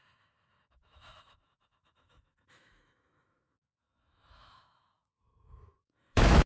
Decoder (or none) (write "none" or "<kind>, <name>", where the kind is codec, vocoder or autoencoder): autoencoder, DAC-VAE